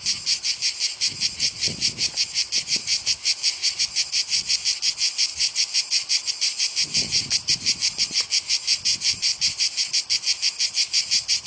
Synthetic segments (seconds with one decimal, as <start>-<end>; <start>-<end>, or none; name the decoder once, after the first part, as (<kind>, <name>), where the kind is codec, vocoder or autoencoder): 5.3-6.3 (vocoder, BigVGAN v2)